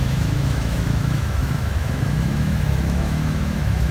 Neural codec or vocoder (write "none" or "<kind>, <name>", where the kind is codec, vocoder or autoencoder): autoencoder, DAC-VAE